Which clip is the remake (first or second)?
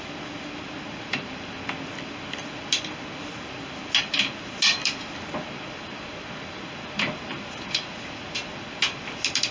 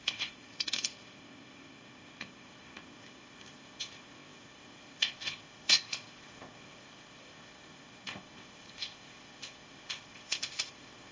second